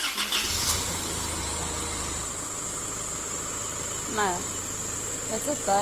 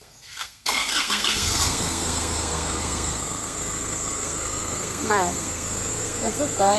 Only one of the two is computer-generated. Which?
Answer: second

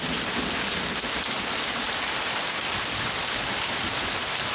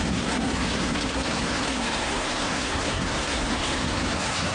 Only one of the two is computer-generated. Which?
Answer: second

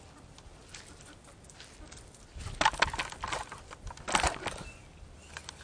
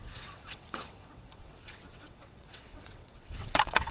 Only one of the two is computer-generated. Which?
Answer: second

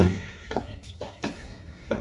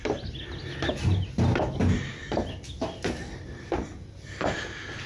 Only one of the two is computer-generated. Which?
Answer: first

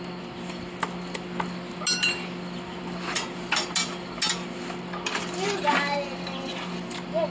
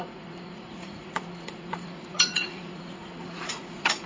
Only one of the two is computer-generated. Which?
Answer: second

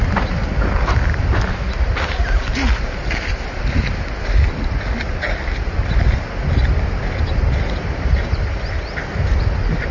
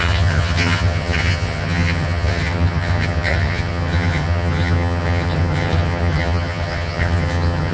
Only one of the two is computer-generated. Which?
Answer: second